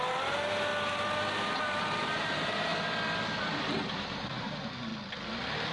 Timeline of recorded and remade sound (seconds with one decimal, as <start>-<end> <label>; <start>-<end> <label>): 0.0-0.7 remade; 0.7-1.6 recorded; 1.6-2.7 remade; 2.7-3.4 recorded; 3.4-4.9 remade; 4.9-5.7 recorded